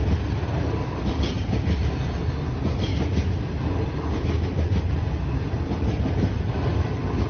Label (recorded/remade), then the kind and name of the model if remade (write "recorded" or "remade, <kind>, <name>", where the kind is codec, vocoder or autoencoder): recorded